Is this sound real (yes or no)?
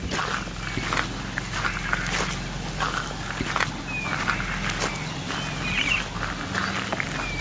yes